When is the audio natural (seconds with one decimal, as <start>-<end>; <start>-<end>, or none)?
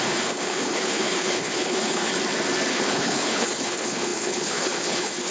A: 2.1-2.7